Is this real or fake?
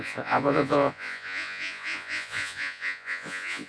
fake